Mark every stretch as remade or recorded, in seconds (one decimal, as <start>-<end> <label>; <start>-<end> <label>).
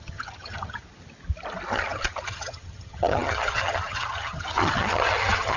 0.0-0.8 remade; 0.8-1.7 recorded; 1.7-5.6 remade